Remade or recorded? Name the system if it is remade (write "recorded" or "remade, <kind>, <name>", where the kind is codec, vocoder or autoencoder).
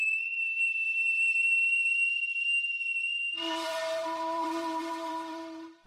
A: remade, vocoder, BigVGAN v2